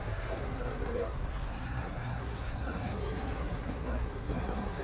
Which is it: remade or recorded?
remade